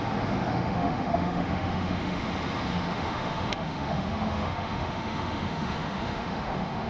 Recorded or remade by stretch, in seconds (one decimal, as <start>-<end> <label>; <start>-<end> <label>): 0.0-0.5 recorded; 0.5-2.3 remade; 2.3-2.7 recorded; 2.7-6.9 remade